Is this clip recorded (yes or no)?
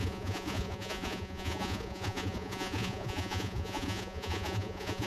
no